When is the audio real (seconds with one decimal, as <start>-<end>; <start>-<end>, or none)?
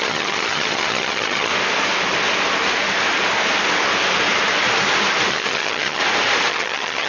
1.5-5.3; 6.0-6.5